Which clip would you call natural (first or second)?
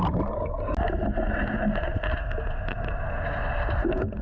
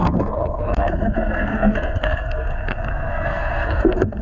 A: first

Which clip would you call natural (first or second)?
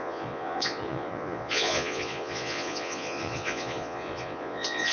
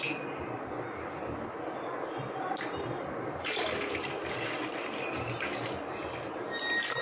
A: second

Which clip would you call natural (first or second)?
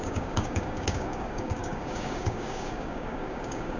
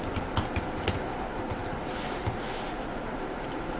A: second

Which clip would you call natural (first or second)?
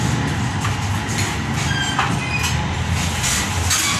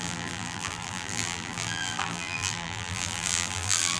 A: first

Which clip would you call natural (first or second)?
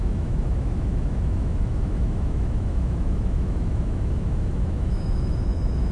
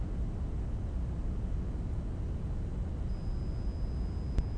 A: second